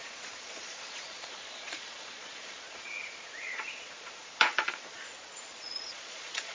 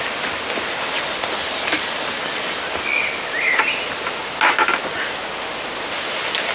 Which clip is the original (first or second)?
second